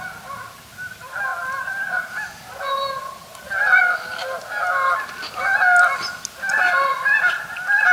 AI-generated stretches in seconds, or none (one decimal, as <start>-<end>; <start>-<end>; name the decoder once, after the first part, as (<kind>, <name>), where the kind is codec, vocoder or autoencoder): 1.3-2.0 (vocoder, BigVGAN v2)

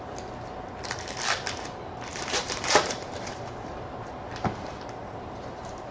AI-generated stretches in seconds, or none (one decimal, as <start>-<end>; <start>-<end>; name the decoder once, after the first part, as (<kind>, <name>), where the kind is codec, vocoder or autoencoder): 2.1-5.9 (vocoder, BigVGAN v2)

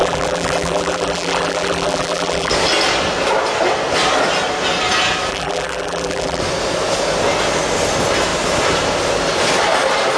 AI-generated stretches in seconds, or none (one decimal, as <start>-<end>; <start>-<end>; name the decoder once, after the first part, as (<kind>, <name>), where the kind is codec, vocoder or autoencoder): 0.0-2.5 (vocoder, BigVGAN v2); 5.3-6.4

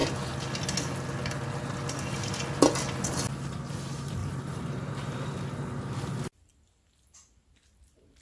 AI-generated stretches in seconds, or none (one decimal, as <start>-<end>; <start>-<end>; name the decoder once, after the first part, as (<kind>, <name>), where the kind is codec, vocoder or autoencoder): 4.2-4.9 (vocoder, BigVGAN v2)

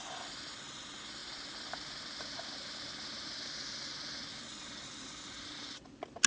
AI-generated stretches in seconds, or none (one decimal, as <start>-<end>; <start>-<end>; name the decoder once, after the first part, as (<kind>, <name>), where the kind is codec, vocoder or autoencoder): none

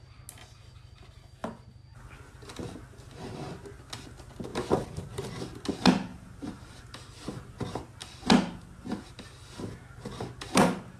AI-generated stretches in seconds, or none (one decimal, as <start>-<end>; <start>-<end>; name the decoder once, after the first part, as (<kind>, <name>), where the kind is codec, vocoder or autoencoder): 4.5-5.3 (vocoder, BigVGAN v2); 6.1-6.8

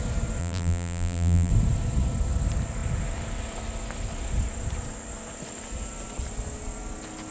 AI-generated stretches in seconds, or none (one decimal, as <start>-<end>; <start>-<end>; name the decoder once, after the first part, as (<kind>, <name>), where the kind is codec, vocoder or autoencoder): 0.4-1.5 (vocoder, BigVGAN v2)

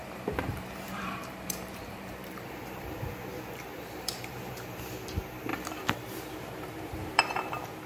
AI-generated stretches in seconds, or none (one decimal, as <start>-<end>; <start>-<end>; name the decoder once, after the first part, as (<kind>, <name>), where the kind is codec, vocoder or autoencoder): 0.0-3.1 (vocoder, BigVGAN v2); 3.7-4.8; 5.5-7.2